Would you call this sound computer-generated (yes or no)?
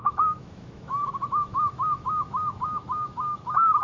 yes